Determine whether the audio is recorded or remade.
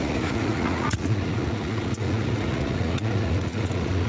remade